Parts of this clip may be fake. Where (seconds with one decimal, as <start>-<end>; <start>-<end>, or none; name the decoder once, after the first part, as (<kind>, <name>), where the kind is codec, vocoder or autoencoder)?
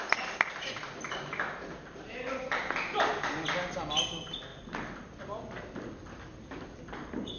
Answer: none